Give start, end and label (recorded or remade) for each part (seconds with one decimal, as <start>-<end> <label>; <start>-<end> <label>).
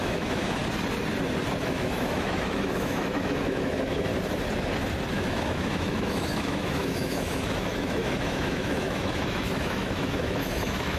0.0-0.6 remade; 0.6-1.6 recorded; 1.6-4.1 remade; 4.1-5.1 recorded; 5.1-11.0 remade